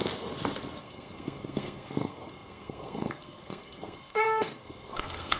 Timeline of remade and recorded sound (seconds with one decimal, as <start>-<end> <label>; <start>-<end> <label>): 0.0-0.8 recorded; 0.8-5.4 remade